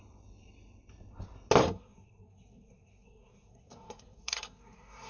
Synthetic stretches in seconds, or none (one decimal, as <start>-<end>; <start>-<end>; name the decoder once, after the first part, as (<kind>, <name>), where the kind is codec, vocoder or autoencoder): 1.6-5.1 (codec, SNAC)